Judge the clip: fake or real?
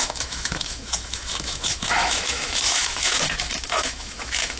fake